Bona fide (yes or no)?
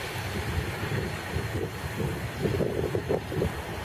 yes